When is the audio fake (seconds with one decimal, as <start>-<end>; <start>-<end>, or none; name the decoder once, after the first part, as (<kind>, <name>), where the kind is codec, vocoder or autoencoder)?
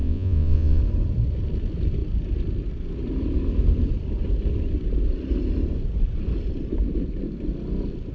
0.0-0.8 (vocoder, Vocos)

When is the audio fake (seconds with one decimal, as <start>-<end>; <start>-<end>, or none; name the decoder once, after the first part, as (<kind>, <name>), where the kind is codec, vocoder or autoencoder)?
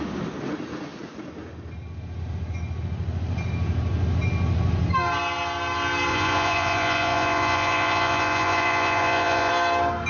6.1-9.5 (vocoder, Vocos)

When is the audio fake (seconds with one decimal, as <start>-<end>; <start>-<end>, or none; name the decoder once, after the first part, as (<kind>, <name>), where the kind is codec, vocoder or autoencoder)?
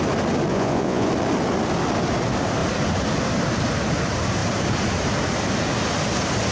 0.5-1.1 (vocoder, Vocos)